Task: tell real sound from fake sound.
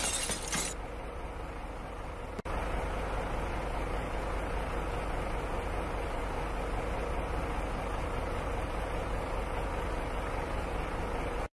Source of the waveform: real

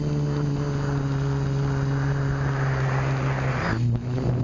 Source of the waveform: real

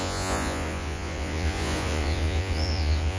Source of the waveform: fake